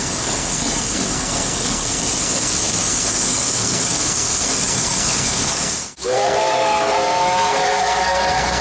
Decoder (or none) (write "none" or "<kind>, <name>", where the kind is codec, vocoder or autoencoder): codec, SNAC